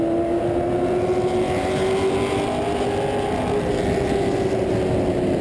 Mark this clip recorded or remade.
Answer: recorded